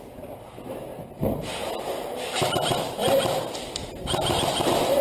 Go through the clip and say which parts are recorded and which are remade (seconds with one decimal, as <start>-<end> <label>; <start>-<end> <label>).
0.0-0.9 remade; 0.9-2.0 recorded; 2.0-3.0 remade; 3.0-5.0 recorded